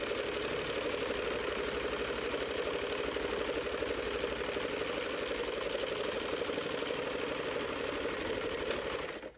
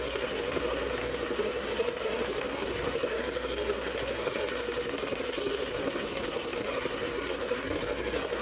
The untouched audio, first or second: first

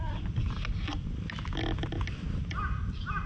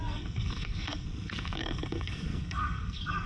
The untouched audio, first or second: first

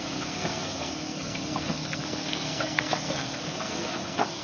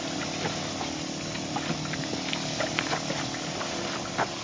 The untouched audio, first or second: second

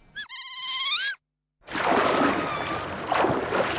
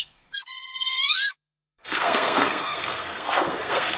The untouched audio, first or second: first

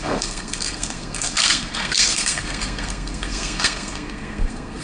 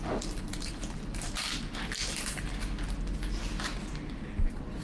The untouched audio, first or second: second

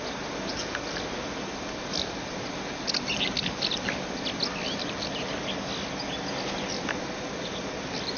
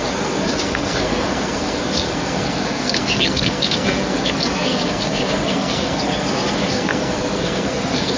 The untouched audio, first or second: first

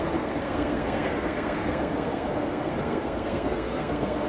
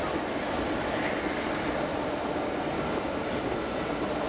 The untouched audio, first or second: second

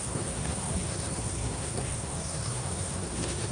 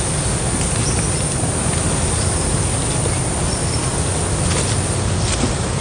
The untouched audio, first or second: second